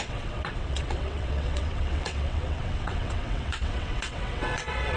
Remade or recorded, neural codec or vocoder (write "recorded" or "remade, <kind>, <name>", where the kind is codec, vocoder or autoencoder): remade, vocoder, WaveNeXt